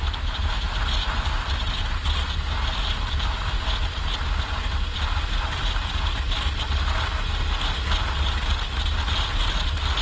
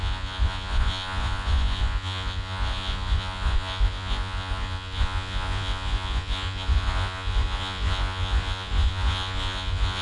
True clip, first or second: first